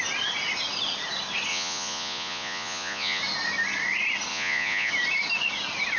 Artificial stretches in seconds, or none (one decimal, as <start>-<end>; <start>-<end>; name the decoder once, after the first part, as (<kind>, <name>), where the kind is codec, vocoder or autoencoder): 1.5-3.2 (vocoder, Vocos); 4.3-4.9